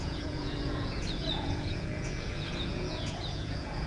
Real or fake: fake